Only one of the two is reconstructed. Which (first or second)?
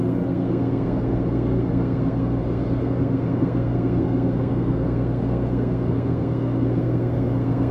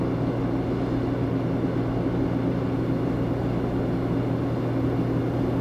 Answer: first